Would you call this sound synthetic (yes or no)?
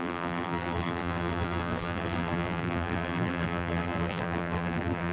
yes